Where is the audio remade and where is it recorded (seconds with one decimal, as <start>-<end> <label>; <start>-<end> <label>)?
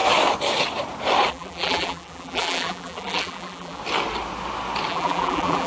0.0-1.3 recorded; 1.3-3.8 remade; 3.8-4.9 recorded; 4.9-5.7 remade